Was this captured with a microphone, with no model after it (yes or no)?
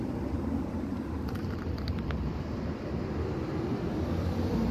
no